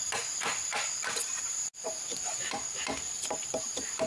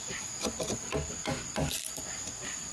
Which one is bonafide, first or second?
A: second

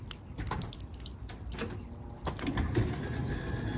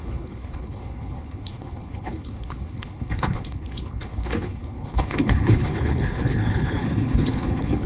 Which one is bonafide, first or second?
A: first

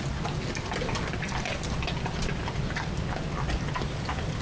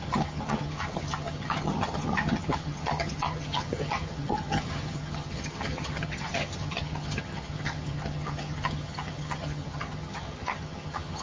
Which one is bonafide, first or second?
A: first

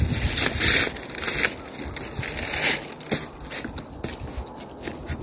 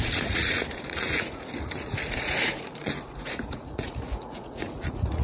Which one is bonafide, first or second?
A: first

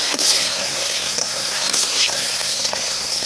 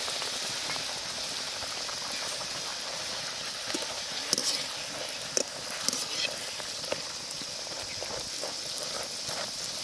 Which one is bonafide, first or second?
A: second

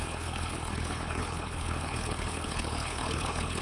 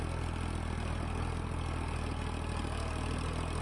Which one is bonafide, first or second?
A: second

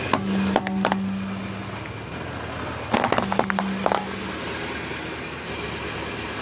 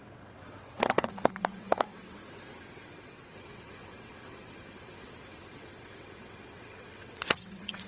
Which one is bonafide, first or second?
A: first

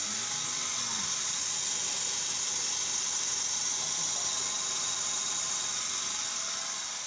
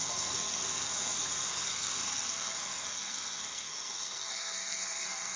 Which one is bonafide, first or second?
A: first